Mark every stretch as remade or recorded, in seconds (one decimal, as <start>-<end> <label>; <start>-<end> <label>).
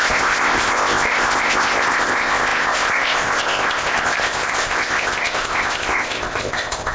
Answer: 0.0-6.9 remade